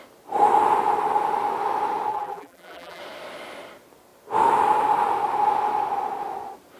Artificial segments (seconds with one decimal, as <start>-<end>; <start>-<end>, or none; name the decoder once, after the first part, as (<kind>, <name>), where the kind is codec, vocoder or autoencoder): 2.1-3.0 (vocoder, BigVGAN v2)